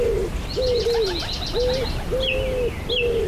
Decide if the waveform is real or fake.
real